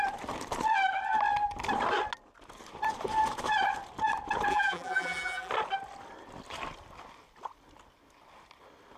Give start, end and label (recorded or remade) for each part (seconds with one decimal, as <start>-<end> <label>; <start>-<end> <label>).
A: 0.0-4.5 recorded; 4.5-5.5 remade; 5.5-9.0 recorded